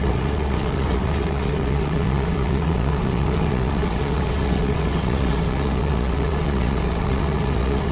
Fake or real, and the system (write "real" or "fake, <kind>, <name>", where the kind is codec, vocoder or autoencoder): fake, vocoder, WaveNeXt